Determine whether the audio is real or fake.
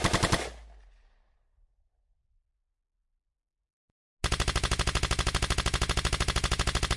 real